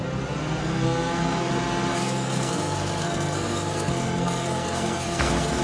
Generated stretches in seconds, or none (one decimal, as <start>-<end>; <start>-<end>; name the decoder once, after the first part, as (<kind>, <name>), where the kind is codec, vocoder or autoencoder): 0.6-1.5 (codec, SNAC); 1.9-5.6